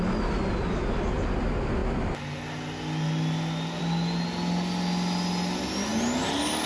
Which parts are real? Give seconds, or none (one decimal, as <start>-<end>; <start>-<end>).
0.0-6.7